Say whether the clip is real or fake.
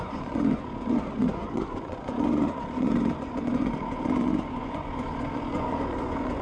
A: fake